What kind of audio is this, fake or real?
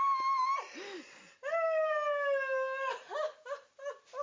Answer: real